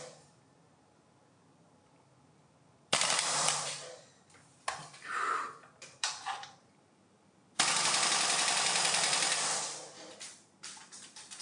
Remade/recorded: remade